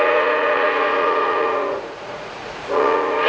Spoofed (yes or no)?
yes